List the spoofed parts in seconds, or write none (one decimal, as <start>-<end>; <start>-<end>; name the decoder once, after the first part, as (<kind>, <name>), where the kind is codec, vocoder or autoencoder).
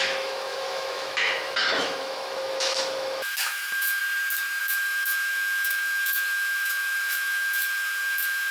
0.0-4.0 (autoencoder, DAC-VAE); 4.6-8.5